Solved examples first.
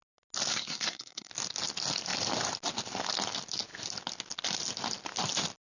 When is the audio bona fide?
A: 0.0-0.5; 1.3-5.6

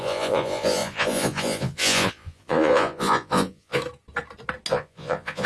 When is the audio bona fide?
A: 3.8-4.7